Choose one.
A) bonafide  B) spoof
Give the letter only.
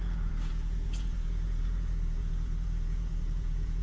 B